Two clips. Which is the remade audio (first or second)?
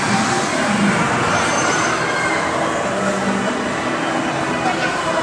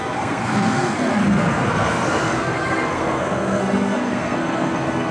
second